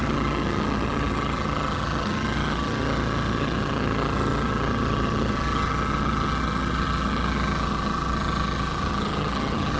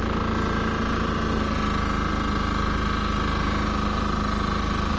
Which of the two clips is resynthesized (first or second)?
first